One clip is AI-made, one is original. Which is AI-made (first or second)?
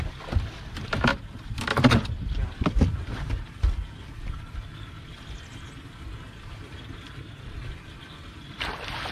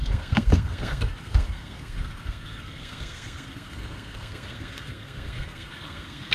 second